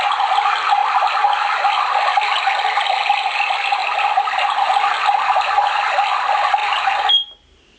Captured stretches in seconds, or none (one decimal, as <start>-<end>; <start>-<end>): 0.0-7.8